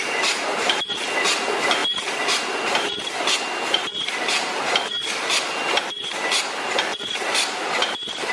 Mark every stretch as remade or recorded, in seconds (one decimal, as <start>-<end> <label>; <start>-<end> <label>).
0.0-1.8 recorded; 1.8-2.9 remade; 2.9-6.9 recorded; 6.9-8.3 remade

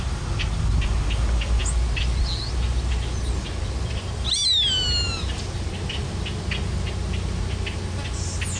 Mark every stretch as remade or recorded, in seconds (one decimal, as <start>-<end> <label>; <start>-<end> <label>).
0.0-8.6 recorded

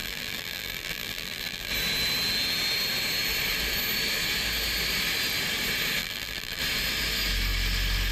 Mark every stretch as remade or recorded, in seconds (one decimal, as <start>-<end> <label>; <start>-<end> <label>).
0.0-1.7 remade; 1.7-6.0 recorded; 6.0-6.6 remade; 6.6-8.1 recorded

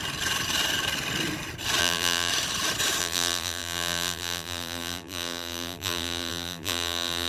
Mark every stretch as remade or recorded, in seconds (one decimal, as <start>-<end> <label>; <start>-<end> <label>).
0.0-1.8 recorded; 1.8-2.3 remade; 2.3-3.0 recorded; 3.0-7.3 remade

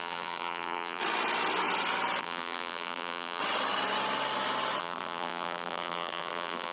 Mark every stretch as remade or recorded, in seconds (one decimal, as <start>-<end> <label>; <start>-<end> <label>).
0.0-1.0 remade; 1.0-2.2 recorded; 2.2-3.4 remade; 3.4-4.8 recorded; 4.8-6.7 remade

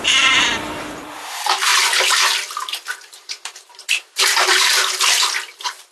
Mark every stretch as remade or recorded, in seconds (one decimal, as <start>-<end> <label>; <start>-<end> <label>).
0.0-1.7 remade; 1.7-3.0 recorded; 3.0-4.8 remade; 4.8-5.5 recorded; 5.5-5.9 remade